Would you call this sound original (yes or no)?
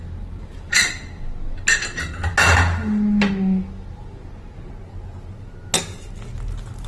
yes